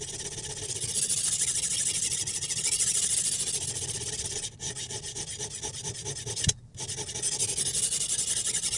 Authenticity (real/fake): real